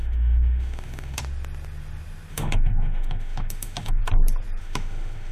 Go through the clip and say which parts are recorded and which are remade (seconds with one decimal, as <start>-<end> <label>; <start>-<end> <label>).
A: 0.0-1.2 remade; 1.2-2.3 recorded; 2.3-4.0 remade; 4.0-4.6 recorded; 4.6-5.3 remade